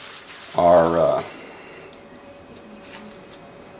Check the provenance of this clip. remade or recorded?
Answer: recorded